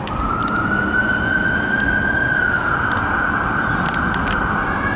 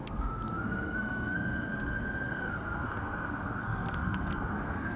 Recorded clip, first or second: first